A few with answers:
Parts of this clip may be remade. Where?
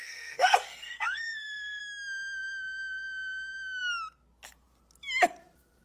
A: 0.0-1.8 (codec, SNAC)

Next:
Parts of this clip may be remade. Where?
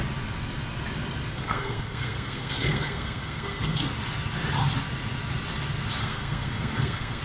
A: 1.3-3.8 (codec, SNAC); 6.0-7.2